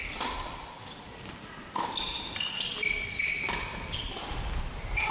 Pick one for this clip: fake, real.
real